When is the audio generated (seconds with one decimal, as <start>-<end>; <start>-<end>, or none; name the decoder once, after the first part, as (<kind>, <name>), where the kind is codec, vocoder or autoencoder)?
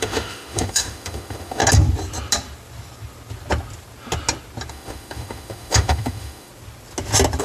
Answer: 0.0-1.6 (autoencoder, DAC-VAE); 4.7-6.5